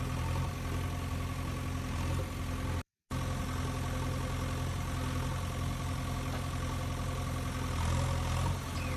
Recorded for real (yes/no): yes